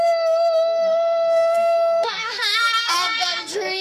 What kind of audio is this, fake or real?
fake